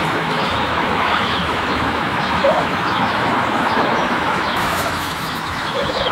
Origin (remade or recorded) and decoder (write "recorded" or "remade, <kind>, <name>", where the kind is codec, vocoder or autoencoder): remade, autoencoder, DAC-VAE